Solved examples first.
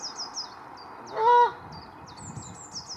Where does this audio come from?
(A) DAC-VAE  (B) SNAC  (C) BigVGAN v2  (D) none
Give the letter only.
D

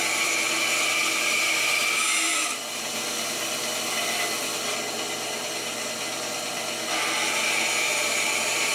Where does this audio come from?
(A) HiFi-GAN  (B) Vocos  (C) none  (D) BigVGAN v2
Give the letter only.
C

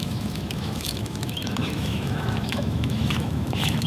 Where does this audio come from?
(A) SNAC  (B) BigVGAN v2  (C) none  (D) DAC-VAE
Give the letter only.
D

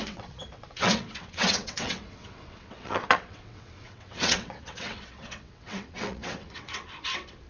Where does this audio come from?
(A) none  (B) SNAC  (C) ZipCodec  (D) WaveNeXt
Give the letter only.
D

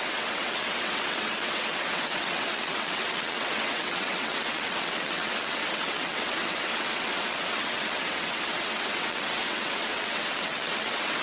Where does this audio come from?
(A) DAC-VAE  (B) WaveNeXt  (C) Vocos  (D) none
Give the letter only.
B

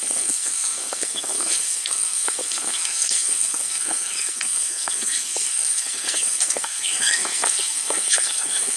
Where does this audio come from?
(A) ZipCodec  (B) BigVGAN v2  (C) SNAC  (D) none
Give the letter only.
C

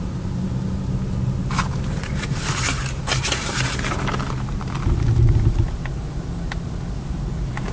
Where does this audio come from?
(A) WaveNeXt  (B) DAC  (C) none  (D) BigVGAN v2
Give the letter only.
C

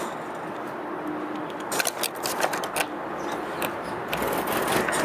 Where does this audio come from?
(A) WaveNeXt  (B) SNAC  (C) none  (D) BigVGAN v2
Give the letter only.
C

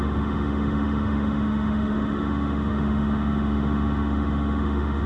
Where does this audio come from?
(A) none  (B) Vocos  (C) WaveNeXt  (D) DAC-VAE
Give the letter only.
D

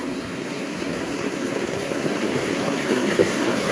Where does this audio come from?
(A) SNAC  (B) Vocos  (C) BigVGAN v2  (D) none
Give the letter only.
A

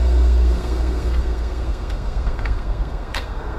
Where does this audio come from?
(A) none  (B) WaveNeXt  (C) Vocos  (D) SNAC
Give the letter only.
D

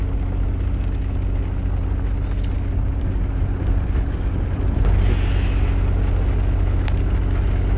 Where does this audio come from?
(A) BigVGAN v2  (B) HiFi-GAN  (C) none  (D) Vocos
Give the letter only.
C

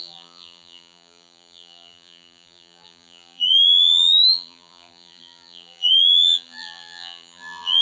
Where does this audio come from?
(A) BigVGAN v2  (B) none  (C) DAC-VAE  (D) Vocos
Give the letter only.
A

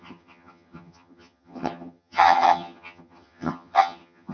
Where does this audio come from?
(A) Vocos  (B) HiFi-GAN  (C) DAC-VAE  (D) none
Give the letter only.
B